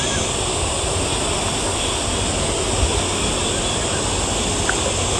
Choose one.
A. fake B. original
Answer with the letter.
B